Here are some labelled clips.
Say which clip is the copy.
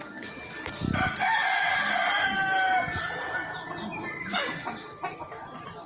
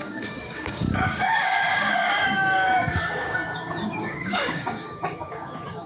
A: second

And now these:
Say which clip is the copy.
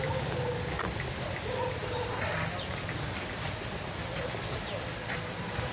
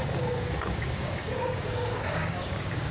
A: second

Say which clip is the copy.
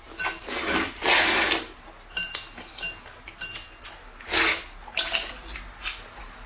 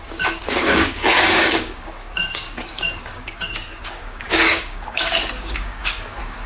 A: second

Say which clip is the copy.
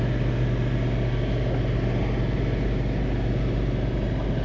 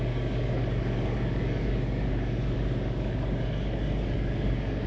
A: second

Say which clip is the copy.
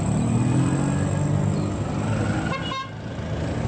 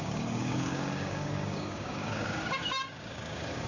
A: second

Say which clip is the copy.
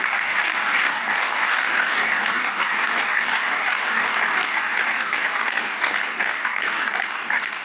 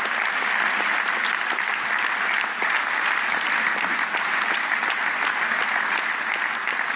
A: first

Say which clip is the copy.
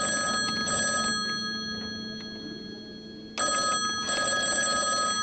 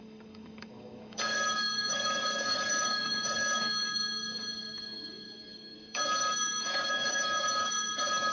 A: second